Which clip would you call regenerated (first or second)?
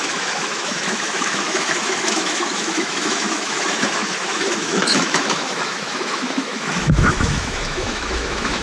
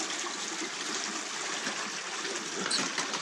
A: first